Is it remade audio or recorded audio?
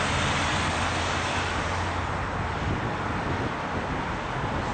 recorded